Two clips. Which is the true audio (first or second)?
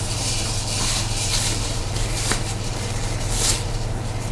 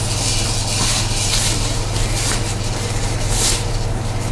second